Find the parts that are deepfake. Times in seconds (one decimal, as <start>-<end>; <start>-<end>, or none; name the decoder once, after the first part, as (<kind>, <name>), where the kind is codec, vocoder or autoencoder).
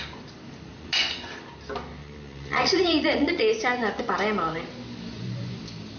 0.7-1.3 (vocoder, Vocos); 2.0-4.0; 5.1-5.6